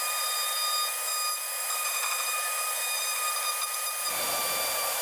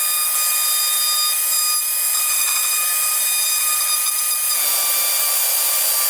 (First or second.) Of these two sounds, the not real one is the first